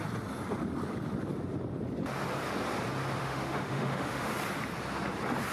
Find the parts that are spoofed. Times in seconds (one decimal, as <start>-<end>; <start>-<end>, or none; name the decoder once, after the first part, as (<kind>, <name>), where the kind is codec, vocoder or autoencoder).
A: 3.2-4.3 (autoencoder, DAC-VAE)